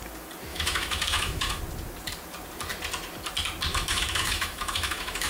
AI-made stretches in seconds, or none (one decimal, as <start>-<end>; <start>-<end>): 0.5-1.6; 3.7-5.3